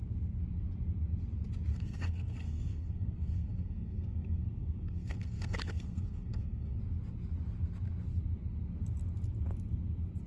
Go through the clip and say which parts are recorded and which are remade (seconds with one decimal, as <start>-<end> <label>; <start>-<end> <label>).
0.0-1.7 recorded; 1.7-6.8 remade; 6.8-10.3 recorded